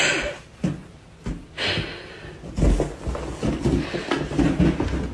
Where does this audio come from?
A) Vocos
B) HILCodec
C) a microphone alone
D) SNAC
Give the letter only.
C